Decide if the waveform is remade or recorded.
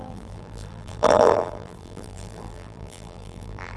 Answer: remade